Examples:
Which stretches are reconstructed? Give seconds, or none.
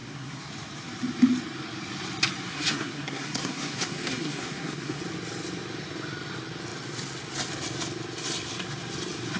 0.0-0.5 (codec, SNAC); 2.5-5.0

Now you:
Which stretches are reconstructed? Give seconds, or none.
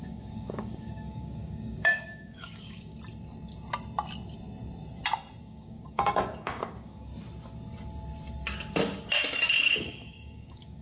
0.0-2.9 (codec, DAC); 5.4-7.1; 9.6-10.8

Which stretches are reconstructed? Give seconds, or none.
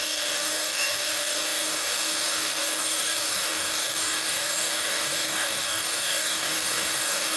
0.0-7.4 (codec, DAC)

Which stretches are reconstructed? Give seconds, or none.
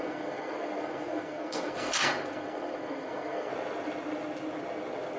0.0-3.5 (codec, SNAC)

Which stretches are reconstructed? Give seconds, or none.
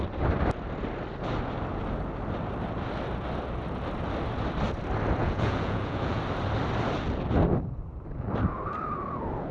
5.2-6.2 (vocoder, Vocos)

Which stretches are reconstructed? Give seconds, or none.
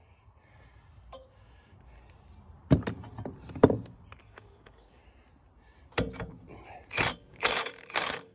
4.2-5.0 (codec, DAC); 7.3-8.3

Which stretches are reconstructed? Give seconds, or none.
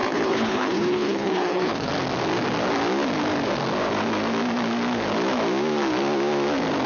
0.0-1.9 (codec, HILCodec)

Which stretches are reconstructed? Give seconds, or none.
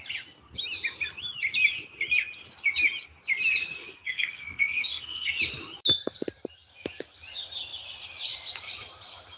3.8-5.3 (codec, SNAC)